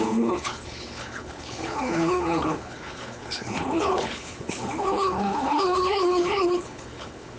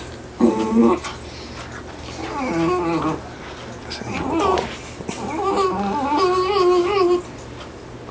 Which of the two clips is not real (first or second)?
first